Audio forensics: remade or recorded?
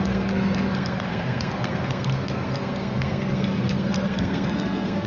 remade